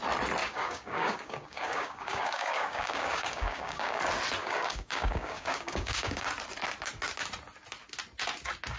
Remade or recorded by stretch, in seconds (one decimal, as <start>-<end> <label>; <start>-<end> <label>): 0.0-0.4 recorded; 0.4-4.0 remade; 4.0-4.4 recorded; 4.4-6.3 remade; 6.3-8.8 recorded